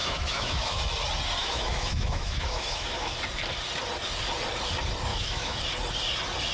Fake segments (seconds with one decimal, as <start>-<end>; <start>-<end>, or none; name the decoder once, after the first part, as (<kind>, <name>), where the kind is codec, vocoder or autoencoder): 0.0-0.8 (autoencoder, DAC-VAE); 1.4-3.1; 5.1-5.6

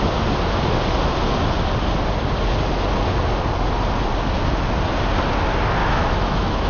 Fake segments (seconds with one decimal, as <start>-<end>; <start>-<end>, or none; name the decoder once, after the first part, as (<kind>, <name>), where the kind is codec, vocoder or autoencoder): 5.8-6.7 (autoencoder, DAC-VAE)

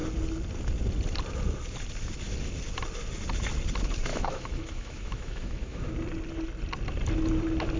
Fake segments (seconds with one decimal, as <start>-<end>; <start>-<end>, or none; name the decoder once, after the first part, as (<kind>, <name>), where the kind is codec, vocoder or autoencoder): 4.1-5.9 (autoencoder, DAC-VAE)

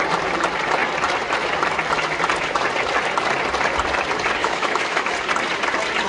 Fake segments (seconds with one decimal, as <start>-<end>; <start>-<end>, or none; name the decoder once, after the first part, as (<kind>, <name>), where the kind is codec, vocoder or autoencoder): 4.4-5.1 (autoencoder, DAC-VAE)

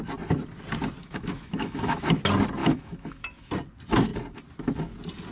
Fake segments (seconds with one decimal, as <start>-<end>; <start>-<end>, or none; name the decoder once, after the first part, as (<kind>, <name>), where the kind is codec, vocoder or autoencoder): 1.0-2.2 (autoencoder, DAC-VAE); 2.6-3.5

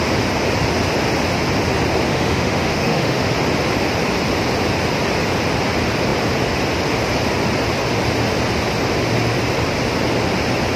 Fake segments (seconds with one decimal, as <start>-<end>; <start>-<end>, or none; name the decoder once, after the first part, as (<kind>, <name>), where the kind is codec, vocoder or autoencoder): 2.1-3.3 (autoencoder, DAC-VAE)

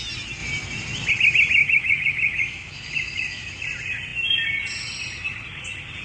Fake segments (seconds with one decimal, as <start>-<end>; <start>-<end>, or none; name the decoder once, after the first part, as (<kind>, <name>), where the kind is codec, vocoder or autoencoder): 1.6-3.6 (autoencoder, DAC-VAE)